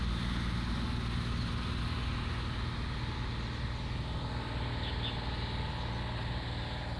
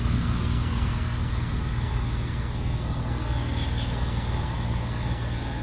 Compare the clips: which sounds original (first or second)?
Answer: first